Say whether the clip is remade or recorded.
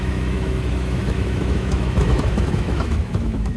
remade